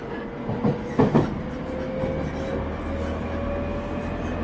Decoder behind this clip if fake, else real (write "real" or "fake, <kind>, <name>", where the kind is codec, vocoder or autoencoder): real